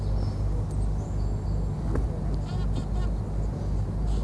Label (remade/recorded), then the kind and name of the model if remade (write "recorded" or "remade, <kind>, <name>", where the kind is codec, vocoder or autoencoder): recorded